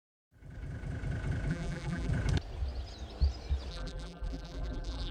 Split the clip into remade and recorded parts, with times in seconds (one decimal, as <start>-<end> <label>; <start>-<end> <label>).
0.0-1.5 recorded; 1.5-2.1 remade; 2.1-3.7 recorded; 3.7-5.1 remade